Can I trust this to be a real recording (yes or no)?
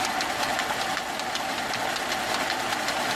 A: yes